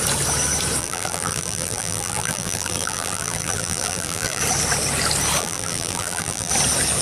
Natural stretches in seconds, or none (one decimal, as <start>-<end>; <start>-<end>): 0.0-0.8; 4.4-5.4; 6.5-7.0